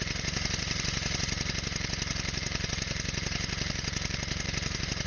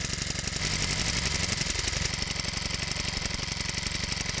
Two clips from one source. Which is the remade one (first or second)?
first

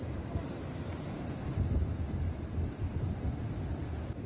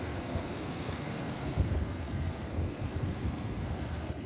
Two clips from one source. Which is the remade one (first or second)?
second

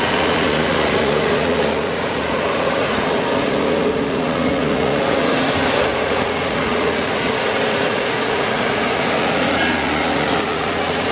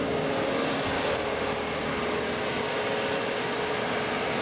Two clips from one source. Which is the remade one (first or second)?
first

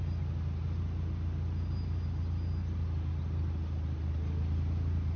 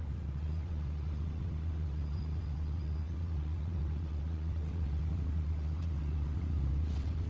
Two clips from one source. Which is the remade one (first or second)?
second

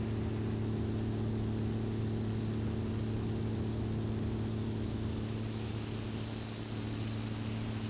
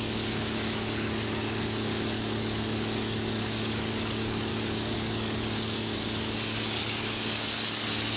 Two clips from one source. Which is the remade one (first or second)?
second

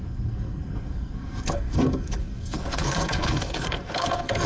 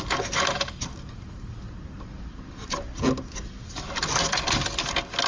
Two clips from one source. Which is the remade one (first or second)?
first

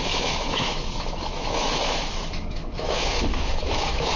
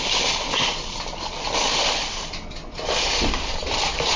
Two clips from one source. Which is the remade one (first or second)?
first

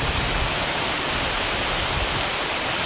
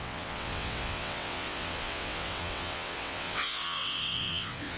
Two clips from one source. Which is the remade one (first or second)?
second